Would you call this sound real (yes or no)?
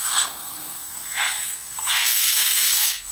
no